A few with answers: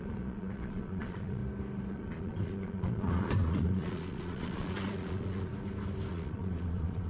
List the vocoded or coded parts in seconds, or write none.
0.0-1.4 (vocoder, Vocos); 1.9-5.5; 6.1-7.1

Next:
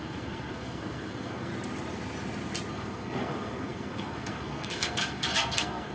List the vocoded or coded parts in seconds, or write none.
0.0-1.5 (codec, SNAC); 2.7-5.9

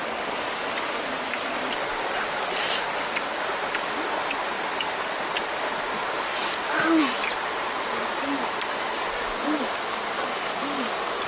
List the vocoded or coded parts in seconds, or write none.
none

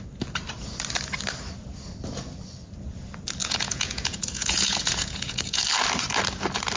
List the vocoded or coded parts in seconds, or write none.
3.4-5.6 (vocoder, Vocos)